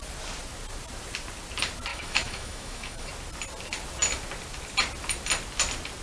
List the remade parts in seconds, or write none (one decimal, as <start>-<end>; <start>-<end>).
1.9-3.1